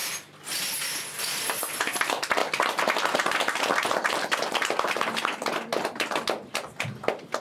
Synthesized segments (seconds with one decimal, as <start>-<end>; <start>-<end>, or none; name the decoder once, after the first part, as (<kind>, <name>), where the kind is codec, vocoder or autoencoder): none